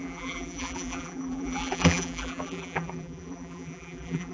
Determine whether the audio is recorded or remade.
remade